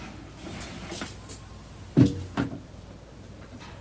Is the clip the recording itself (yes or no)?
yes